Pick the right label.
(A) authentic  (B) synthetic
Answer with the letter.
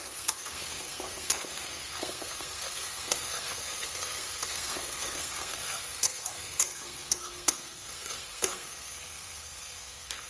B